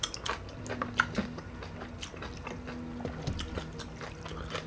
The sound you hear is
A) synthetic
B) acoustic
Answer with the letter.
B